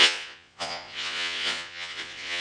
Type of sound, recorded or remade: remade